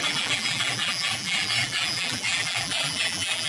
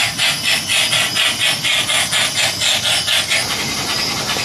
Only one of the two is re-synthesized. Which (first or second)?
first